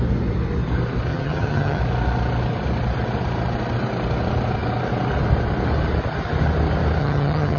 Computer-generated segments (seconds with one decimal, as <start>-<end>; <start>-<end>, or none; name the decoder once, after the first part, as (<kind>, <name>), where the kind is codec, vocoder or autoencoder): 1.1-1.8 (vocoder, HiFi-GAN); 7.0-7.6